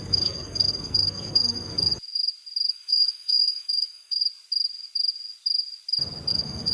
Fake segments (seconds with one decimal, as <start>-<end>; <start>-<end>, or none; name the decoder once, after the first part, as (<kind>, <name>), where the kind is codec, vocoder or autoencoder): 0.0-1.9 (codec, SNAC); 2.7-4.2; 6.3-6.7

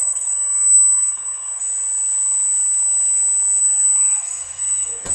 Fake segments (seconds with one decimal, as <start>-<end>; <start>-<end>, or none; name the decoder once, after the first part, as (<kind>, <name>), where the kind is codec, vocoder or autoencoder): 0.0-1.6 (codec, SNAC); 3.6-5.1